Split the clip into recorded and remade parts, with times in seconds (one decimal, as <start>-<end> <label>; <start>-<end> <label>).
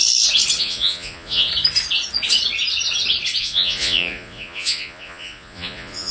0.0-0.6 recorded; 0.6-1.5 remade; 1.5-3.4 recorded; 3.4-6.1 remade